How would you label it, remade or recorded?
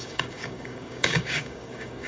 remade